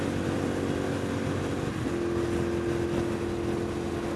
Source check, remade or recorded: recorded